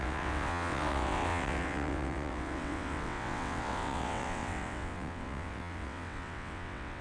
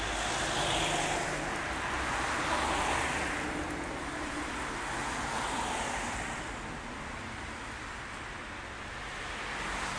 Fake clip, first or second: first